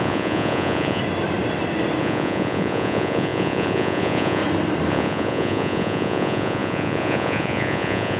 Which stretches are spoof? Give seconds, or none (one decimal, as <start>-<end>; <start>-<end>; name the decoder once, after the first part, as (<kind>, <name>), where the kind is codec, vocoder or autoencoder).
0.0-1.0 (vocoder, Vocos); 2.0-4.4; 4.9-8.2